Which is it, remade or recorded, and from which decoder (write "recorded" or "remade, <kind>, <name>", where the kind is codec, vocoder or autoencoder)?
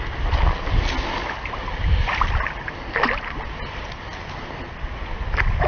recorded